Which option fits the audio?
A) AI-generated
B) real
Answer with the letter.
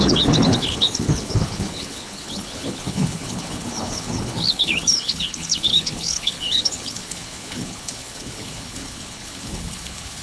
A